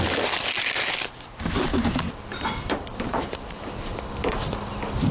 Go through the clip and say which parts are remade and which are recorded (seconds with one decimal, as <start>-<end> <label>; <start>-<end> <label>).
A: 0.0-1.1 recorded; 1.1-4.0 remade; 4.0-5.1 recorded